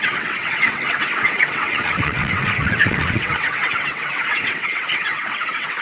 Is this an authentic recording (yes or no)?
no